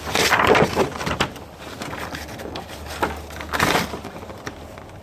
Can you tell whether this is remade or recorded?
recorded